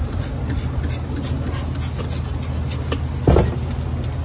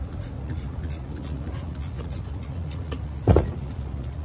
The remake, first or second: second